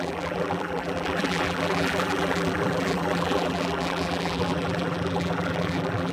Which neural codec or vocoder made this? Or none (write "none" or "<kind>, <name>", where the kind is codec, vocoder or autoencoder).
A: vocoder, BigVGAN v2